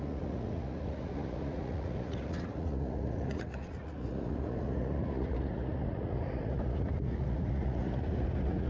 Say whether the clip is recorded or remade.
remade